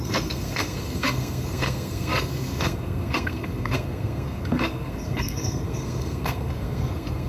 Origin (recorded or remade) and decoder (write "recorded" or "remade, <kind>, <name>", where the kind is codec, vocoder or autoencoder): remade, codec, SNAC